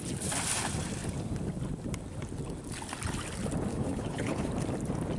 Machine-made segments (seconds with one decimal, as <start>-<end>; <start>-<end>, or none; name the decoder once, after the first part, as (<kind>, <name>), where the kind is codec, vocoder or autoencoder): 3.7-4.5 (codec, HILCodec)